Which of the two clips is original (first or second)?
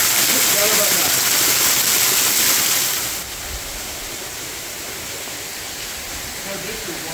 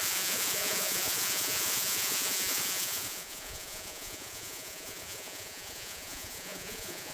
first